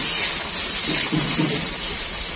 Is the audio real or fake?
real